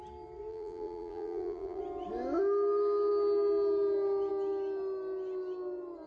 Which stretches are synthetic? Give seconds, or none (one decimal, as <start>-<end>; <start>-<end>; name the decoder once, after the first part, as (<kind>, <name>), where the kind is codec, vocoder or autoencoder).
0.5-1.8 (vocoder, BigVGAN v2)